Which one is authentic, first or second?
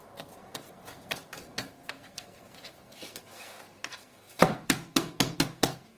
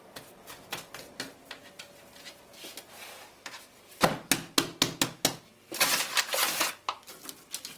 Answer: second